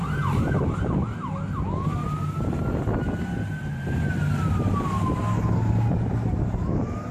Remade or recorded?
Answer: recorded